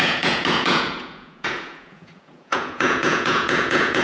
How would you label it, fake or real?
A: fake